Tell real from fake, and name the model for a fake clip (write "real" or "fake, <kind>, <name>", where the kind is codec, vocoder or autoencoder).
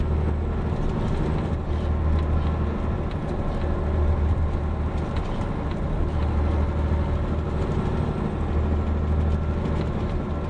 real